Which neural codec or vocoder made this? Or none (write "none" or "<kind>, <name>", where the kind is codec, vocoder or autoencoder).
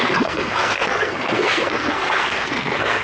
codec, SNAC